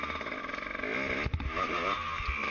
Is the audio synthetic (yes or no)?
no